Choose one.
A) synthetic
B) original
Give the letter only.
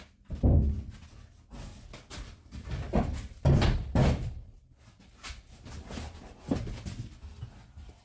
B